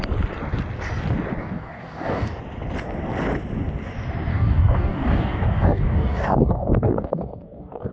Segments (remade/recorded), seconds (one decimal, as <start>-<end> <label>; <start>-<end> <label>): 0.0-1.4 recorded; 1.4-2.4 remade; 2.4-4.3 recorded; 4.3-7.9 remade